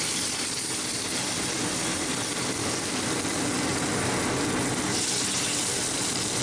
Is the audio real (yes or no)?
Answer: yes